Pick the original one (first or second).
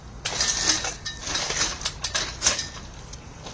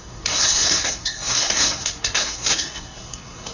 first